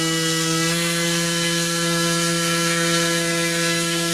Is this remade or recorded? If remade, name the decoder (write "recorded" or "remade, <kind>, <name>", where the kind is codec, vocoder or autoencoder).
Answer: remade, codec, SNAC